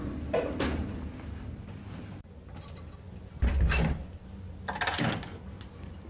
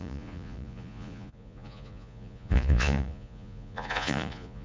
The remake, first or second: second